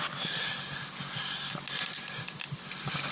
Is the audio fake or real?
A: real